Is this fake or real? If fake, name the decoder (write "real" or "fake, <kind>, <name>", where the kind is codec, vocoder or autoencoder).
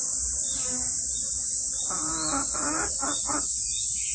real